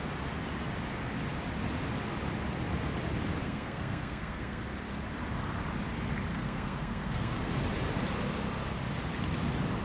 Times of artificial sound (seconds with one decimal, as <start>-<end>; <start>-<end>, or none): 3.4-4.6; 6.3-7.5